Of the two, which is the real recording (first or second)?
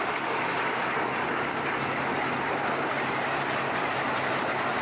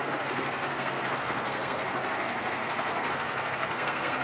first